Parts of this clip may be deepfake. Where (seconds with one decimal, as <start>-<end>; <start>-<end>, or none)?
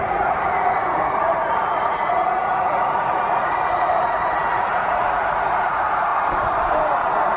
0.0-6.1